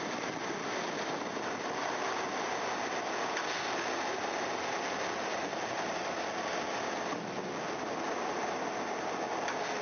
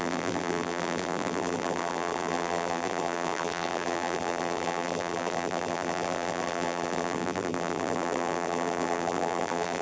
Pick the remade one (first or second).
second